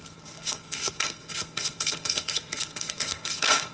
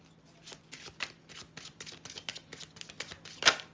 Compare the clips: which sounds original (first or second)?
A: second